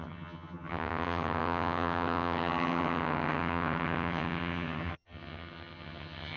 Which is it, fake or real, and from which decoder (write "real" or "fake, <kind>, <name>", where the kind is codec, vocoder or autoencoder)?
fake, vocoder, HiFi-GAN